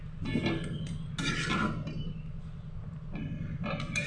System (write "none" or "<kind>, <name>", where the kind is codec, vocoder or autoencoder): none